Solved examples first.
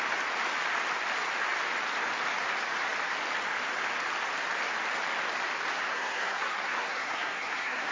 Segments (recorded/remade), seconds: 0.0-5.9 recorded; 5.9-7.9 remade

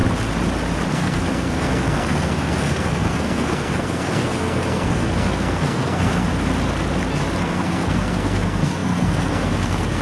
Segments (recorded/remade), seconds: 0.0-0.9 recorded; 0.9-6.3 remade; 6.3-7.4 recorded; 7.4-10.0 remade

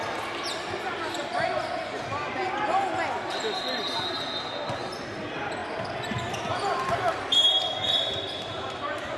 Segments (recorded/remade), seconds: 0.0-9.2 recorded

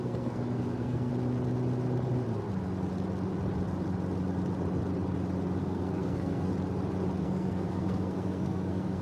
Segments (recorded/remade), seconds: 0.0-1.1 remade; 1.1-5.6 recorded; 5.6-6.5 remade; 6.5-7.2 recorded; 7.2-9.0 remade

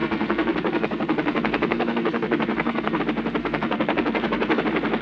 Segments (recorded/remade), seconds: 0.0-3.0 remade; 3.0-3.4 recorded; 3.4-4.6 remade; 4.6-5.0 recorded

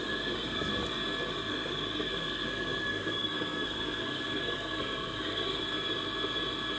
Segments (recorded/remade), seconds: 0.0-0.7 remade; 0.7-1.5 recorded; 1.5-5.6 remade; 5.6-6.8 recorded

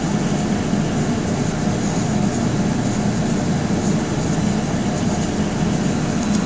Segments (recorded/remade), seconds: 0.0-6.5 recorded

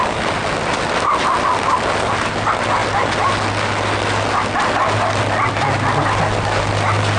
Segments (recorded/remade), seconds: 0.0-7.2 recorded